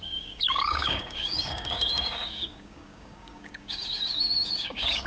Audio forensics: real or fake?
fake